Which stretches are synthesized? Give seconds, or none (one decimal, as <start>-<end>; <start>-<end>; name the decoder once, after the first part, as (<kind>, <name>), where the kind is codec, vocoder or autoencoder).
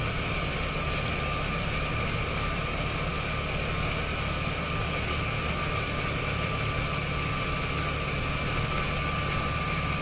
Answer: none